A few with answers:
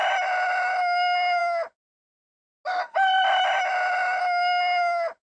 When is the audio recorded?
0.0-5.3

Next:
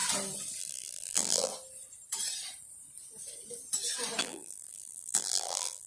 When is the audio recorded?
0.0-0.6; 1.5-4.2

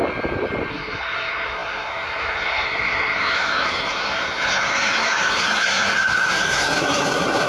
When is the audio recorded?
0.0-0.7

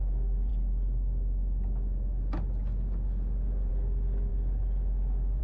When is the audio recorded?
0.0-5.4

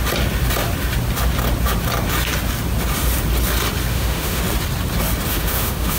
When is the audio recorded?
0.0-3.9; 4.4-5.3

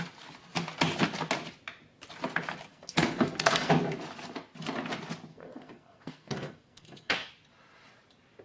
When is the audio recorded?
0.0-2.7; 3.7-5.3; 7.3-8.4

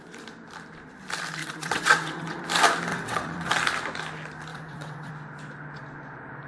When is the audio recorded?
0.0-1.4; 2.4-2.9; 3.5-4.5; 5.1-6.5